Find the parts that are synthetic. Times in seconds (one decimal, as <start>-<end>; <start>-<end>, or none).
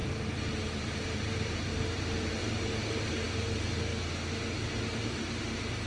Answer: 0.0-2.4; 3.0-3.9; 5.4-5.9